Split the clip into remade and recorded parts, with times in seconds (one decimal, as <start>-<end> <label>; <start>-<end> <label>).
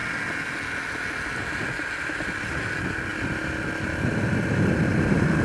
0.0-5.4 recorded